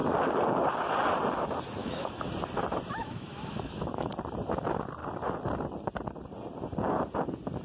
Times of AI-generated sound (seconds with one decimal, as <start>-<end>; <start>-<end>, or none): 1.8-2.3; 3.0-4.1